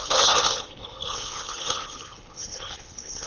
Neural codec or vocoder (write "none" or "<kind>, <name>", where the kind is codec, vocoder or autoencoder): codec, HILCodec